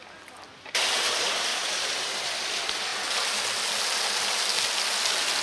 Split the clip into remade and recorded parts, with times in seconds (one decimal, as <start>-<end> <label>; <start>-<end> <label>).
0.0-0.5 recorded; 0.5-1.1 remade; 1.1-1.5 recorded; 1.5-2.4 remade; 2.4-5.4 recorded